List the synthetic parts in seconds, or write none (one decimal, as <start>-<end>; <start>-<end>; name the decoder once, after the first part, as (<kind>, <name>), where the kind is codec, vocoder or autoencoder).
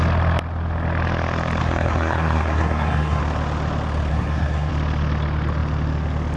1.6-3.2 (codec, SNAC); 4.1-4.7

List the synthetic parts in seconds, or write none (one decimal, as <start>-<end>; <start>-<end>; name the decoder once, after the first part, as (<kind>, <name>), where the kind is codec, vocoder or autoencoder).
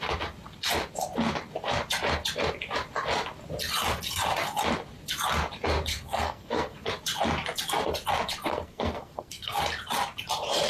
5.9-6.9 (codec, SNAC); 8.5-9.6